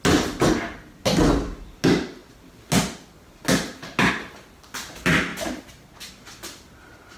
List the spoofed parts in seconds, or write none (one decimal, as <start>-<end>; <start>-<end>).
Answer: 5.3-6.1